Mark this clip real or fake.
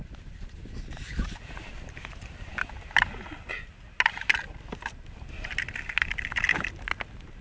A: real